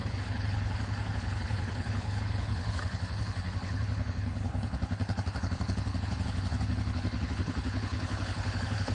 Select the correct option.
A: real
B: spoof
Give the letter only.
B